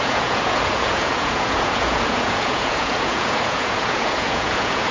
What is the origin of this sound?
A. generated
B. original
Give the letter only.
A